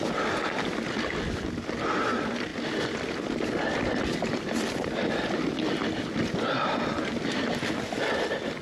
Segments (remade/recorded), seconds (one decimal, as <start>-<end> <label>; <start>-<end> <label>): 0.0-8.6 recorded